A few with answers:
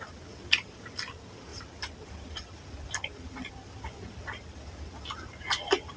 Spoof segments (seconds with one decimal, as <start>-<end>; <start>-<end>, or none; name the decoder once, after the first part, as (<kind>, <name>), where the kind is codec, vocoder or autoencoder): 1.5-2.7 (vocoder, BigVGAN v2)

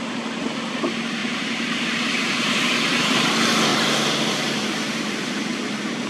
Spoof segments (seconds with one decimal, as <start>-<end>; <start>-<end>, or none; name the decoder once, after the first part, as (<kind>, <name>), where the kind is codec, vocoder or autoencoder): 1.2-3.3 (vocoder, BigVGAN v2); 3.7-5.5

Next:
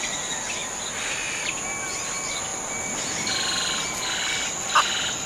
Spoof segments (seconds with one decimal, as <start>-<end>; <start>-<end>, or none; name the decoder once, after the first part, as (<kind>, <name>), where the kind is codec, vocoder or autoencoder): none

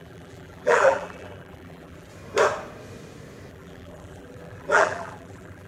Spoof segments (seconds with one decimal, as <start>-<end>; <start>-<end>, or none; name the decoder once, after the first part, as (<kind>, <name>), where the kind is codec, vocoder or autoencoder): 0.0-2.1 (vocoder, BigVGAN v2); 3.5-5.7

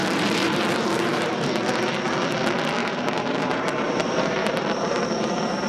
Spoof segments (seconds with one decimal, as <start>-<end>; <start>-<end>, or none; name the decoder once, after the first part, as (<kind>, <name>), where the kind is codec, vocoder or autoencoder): 0.0-1.5 (vocoder, BigVGAN v2); 2.8-5.1